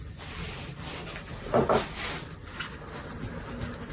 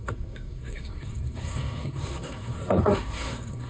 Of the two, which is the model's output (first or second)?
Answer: second